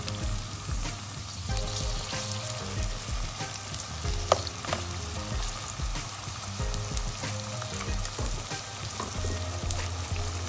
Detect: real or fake real